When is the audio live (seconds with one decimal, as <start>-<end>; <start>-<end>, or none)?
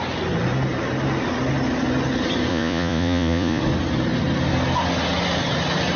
0.0-2.5; 3.6-6.0